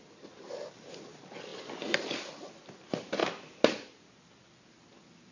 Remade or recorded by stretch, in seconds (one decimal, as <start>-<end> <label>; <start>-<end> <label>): 0.0-5.3 recorded